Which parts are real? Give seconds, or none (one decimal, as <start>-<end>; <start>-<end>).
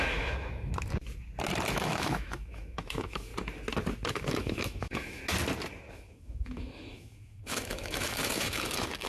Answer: 0.7-1.7; 3.3-4.1; 5.2-5.9